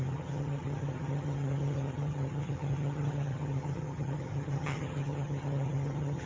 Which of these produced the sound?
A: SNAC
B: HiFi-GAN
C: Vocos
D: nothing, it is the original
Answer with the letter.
B